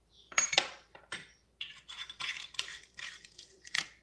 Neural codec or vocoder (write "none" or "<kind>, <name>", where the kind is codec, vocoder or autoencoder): vocoder, BigVGAN v2